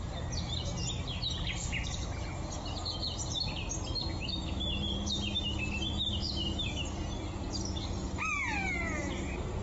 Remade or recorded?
recorded